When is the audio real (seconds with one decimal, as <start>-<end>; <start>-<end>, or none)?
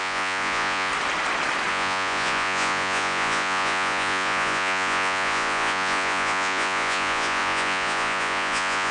0.9-1.7